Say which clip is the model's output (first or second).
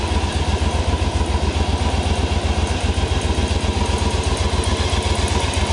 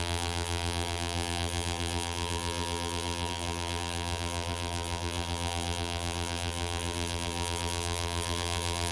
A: second